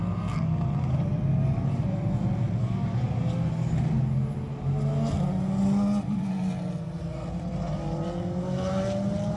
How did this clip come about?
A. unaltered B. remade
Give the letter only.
A